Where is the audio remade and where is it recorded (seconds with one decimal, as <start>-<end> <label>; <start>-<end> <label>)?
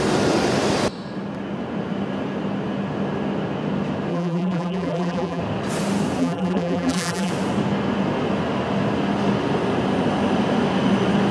0.0-4.1 recorded; 4.1-5.4 remade; 5.4-6.2 recorded; 6.2-7.3 remade; 7.3-11.3 recorded